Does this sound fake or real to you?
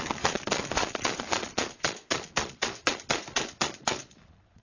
fake